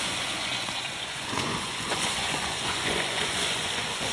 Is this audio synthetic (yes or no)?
yes